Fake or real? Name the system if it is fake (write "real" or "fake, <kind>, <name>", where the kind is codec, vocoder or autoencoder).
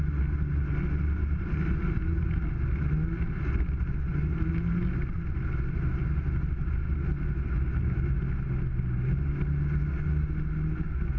real